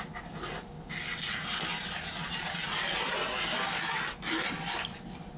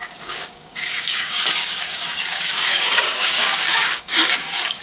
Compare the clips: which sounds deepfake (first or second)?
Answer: second